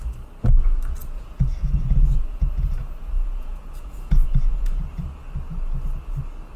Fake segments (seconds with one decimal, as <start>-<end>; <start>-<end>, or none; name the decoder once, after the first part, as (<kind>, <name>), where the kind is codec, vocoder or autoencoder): 1.0-4.9 (vocoder, Vocos)